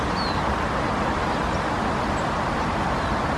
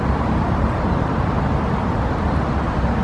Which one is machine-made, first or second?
second